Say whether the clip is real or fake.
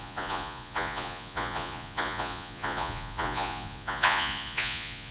fake